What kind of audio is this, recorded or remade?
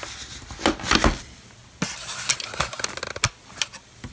recorded